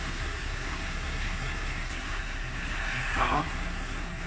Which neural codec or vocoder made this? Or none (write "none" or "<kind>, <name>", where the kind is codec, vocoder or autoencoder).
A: codec, SNAC